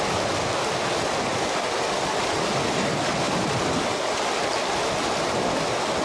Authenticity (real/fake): real